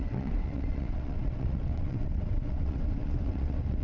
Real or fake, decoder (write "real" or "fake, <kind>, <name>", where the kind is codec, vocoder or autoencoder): fake, vocoder, WaveNeXt